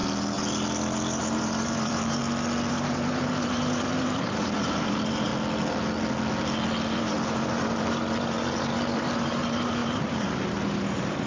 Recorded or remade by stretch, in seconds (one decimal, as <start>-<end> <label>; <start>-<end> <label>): 0.0-1.2 recorded; 1.2-2.2 remade; 2.2-2.7 recorded; 2.7-5.3 remade; 5.3-7.0 recorded; 7.0-11.3 remade